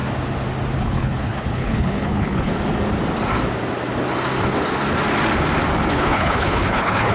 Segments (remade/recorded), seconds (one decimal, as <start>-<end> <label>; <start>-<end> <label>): 0.0-0.8 recorded; 0.8-2.5 remade; 2.5-5.9 recorded; 5.9-7.1 remade